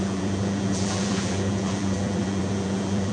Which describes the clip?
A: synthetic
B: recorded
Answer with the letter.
A